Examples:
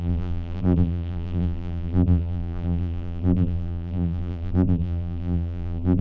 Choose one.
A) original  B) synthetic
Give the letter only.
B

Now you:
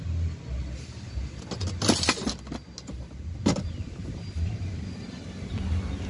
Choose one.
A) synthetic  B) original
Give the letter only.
B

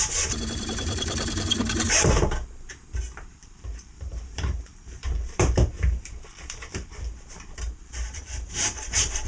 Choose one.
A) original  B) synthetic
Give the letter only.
B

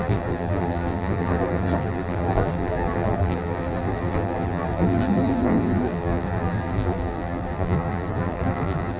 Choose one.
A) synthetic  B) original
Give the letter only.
A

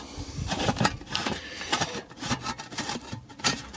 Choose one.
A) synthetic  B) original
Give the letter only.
A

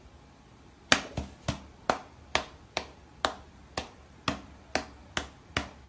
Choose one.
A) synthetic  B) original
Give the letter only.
B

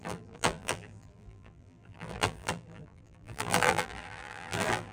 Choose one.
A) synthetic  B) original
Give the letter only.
A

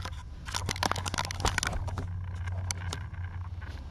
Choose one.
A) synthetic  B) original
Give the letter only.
B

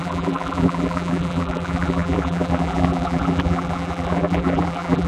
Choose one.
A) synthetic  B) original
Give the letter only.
A